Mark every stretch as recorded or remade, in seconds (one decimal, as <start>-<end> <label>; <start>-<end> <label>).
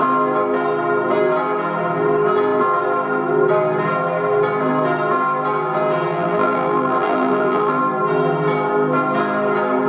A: 0.0-6.1 recorded; 6.1-7.8 remade; 7.8-9.9 recorded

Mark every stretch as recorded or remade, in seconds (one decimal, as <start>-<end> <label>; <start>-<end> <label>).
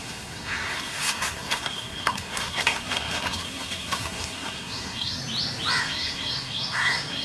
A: 0.0-5.2 remade; 5.2-5.8 recorded; 5.8-7.2 remade